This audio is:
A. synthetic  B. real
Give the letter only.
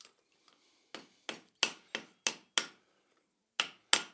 B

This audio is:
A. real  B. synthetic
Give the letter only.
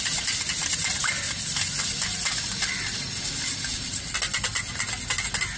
A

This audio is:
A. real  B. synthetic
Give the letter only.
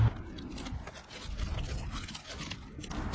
A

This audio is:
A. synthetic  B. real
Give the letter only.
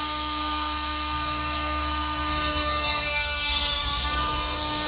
A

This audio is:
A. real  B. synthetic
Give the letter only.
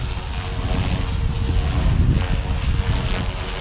A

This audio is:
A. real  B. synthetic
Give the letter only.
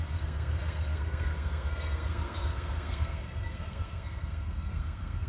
B